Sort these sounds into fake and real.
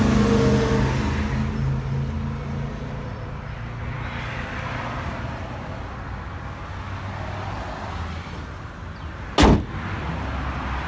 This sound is real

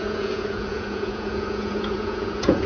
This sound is fake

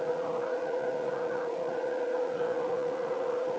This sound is fake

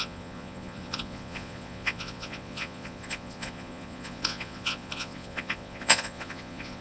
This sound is fake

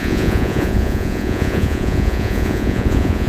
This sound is fake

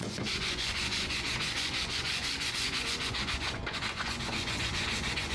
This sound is fake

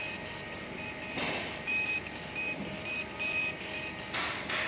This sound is real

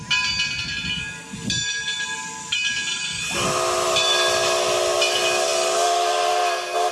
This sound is real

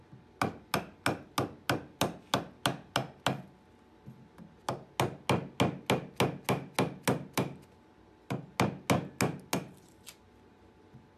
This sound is real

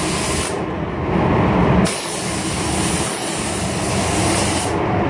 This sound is real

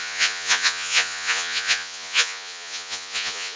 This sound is fake